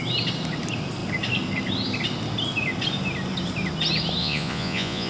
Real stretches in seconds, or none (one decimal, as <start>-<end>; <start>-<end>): 0.0-4.2